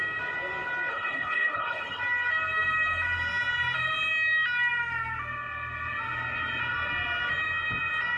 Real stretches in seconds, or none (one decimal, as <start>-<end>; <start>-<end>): 0.0-0.9; 2.0-8.2